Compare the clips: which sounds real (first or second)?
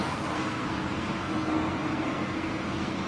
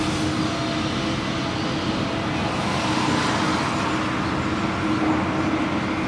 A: second